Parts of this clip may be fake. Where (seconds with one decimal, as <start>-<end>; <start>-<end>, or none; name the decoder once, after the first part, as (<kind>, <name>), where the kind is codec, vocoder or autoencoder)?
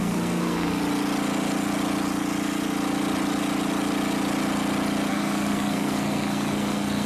0.0-0.8 (codec, SNAC); 5.1-7.1